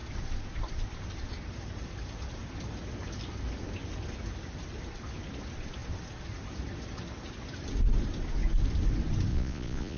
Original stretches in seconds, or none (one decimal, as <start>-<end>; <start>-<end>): 0.0-9.3